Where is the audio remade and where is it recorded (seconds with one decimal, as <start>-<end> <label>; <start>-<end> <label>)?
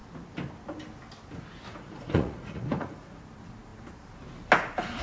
0.0-1.7 recorded; 1.7-3.2 remade; 3.2-5.0 recorded